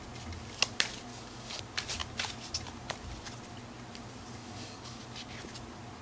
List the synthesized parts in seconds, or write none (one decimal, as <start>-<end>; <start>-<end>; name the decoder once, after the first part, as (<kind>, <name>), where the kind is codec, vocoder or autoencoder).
1.1-1.6 (codec, DAC); 4.4-5.0